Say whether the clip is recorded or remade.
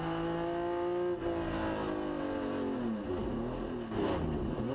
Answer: recorded